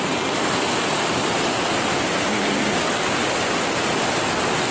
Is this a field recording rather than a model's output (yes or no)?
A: yes